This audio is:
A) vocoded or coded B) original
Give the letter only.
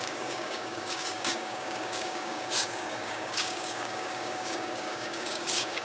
A